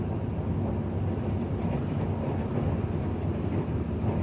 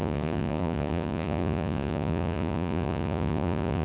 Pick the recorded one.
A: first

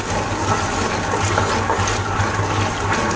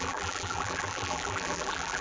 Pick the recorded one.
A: first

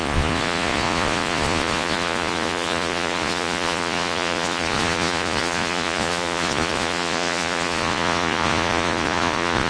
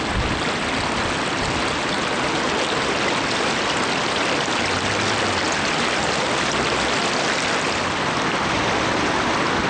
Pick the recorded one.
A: second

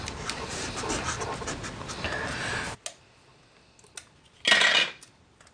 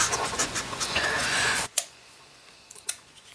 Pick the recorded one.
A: first